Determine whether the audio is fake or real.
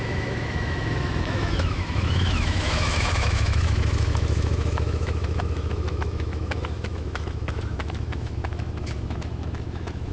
fake